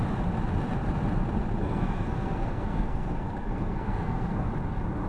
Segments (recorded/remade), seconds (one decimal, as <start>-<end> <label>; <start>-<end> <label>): 0.0-1.6 recorded; 1.6-4.5 remade; 4.5-5.1 recorded